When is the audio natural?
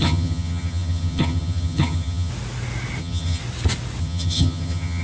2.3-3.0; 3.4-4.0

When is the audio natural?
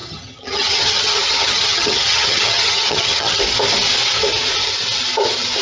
3.4-5.6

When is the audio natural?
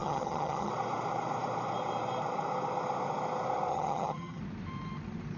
0.7-3.7; 4.4-5.4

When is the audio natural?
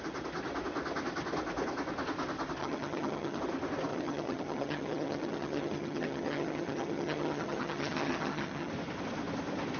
0.0-2.6; 3.4-3.9; 8.7-9.8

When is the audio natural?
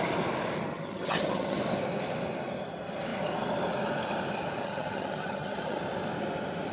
0.0-0.7; 1.6-4.6; 5.8-6.7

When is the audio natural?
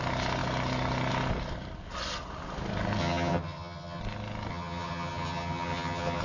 0.0-3.0; 4.0-4.5